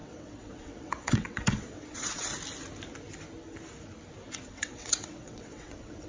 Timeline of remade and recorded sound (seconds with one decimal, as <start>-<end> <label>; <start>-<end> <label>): 0.0-2.3 remade; 2.3-4.3 recorded; 4.3-6.1 remade